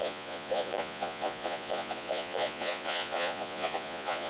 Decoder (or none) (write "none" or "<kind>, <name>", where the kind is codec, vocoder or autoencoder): vocoder, Vocos